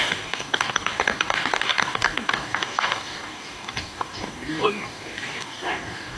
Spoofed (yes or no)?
yes